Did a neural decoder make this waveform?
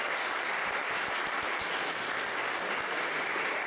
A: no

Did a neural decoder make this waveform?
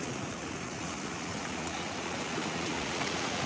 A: yes